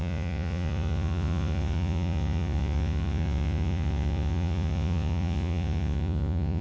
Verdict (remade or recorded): remade